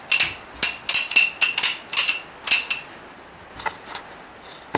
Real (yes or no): yes